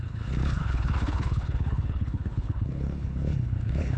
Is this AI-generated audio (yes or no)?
yes